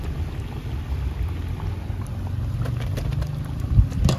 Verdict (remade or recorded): recorded